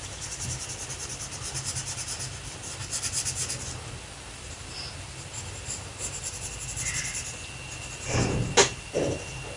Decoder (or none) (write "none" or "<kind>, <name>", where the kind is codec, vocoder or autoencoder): none